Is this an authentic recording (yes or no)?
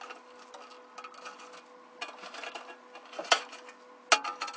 yes